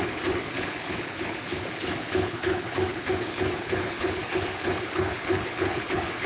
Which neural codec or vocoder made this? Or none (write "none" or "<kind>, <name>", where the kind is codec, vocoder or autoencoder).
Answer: codec, HILCodec